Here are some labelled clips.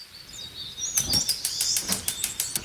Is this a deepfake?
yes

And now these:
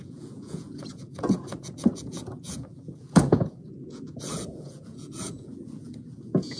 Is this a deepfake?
yes